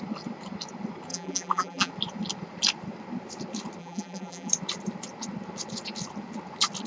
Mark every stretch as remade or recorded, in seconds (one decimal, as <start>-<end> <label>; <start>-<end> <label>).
0.0-1.1 recorded; 1.1-1.9 remade; 1.9-3.8 recorded; 3.8-4.5 remade; 4.5-6.9 recorded